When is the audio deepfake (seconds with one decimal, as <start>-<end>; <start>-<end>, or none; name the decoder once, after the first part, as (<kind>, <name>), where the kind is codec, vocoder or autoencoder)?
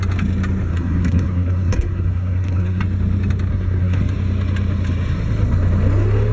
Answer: 0.7-2.8 (codec, SNAC); 3.5-4.0